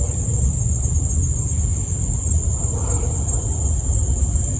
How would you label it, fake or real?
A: real